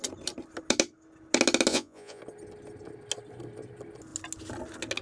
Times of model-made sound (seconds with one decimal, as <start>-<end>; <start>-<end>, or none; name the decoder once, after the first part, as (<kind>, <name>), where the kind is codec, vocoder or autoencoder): 1.7-2.2 (vocoder, Vocos)